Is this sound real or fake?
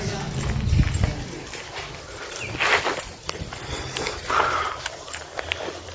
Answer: real